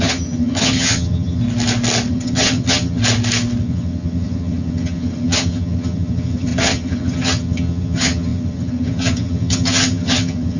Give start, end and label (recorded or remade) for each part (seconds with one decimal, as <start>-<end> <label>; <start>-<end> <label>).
0.0-1.4 remade; 1.4-2.1 recorded; 2.1-3.0 remade; 3.0-3.6 recorded; 3.6-10.6 remade